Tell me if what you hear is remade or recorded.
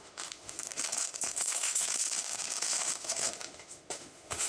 remade